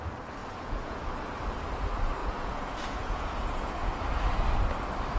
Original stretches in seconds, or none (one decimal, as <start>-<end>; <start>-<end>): 0.0-0.4; 1.1-2.2; 3.9-5.2